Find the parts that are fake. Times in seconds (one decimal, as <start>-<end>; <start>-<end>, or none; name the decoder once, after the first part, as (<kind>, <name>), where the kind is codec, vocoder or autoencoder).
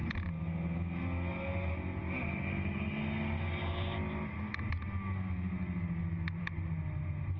none